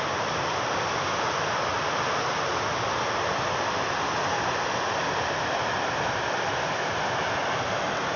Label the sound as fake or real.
real